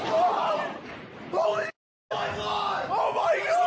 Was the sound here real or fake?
real